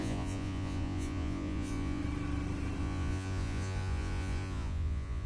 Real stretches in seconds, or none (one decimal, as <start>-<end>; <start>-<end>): 2.0-2.8